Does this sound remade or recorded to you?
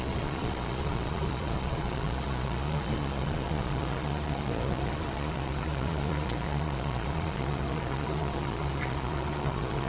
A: remade